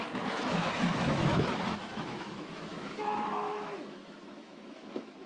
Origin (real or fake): fake